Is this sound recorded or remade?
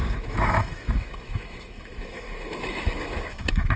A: remade